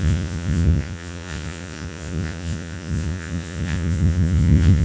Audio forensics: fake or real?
fake